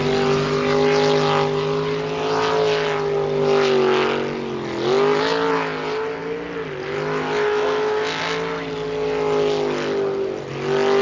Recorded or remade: recorded